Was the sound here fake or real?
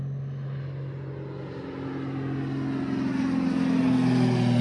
real